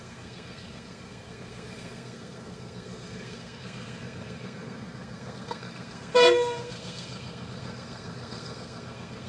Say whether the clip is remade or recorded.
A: remade